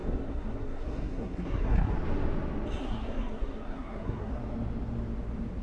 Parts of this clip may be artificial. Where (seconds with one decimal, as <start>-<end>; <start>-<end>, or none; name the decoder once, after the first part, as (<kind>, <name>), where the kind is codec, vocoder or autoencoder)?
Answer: 0.0-1.9 (codec, SNAC); 2.8-4.3